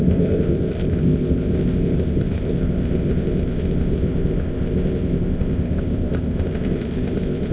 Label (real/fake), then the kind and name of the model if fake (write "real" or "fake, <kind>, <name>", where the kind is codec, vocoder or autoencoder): fake, codec, ZipCodec